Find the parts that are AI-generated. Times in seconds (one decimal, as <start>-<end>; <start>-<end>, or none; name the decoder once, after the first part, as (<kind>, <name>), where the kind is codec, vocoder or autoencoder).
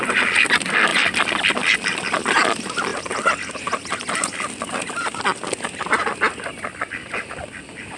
0.0-2.9 (vocoder, BigVGAN v2); 7.4-8.0